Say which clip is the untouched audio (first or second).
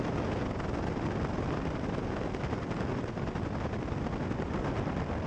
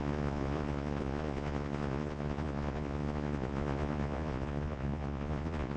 first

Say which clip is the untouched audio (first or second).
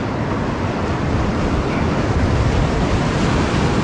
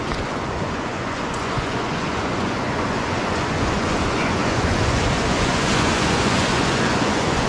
first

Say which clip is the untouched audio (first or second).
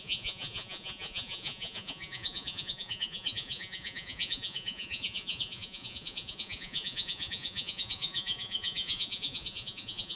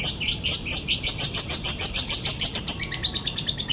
second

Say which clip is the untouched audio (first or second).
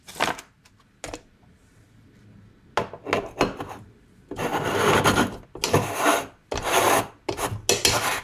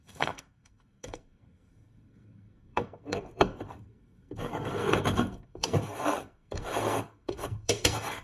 first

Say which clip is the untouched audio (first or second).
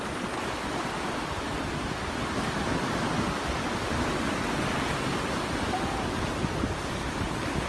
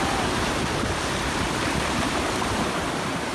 first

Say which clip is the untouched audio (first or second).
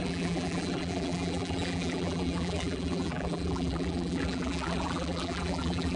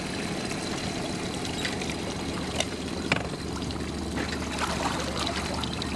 second